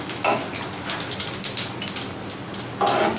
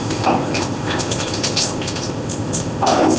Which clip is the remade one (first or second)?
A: second